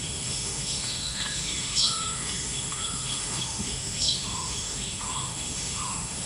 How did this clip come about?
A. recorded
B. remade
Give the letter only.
B